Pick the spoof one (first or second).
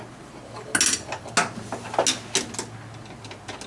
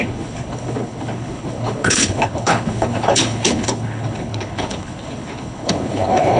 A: second